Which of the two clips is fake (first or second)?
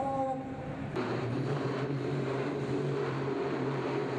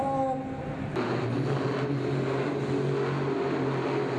first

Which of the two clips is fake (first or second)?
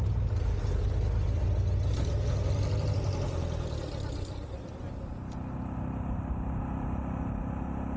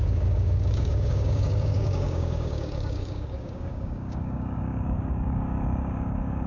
second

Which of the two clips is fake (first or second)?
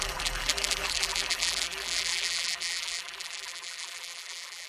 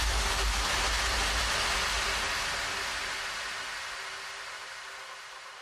first